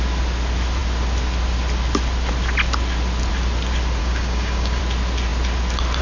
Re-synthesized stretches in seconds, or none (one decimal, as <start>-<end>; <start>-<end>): 4.0-4.8